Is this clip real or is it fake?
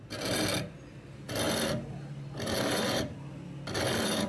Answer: real